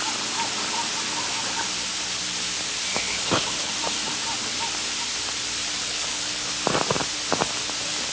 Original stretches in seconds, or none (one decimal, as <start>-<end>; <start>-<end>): 0.0-2.9; 3.7-5.8; 6.5-8.1